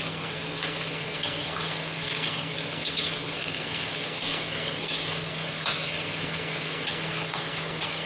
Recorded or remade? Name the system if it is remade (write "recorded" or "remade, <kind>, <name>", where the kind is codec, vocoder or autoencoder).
remade, codec, SNAC